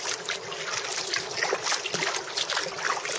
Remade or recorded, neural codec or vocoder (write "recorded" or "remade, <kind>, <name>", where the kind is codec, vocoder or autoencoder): recorded